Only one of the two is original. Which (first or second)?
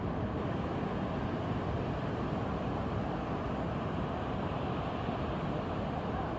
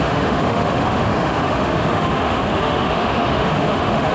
first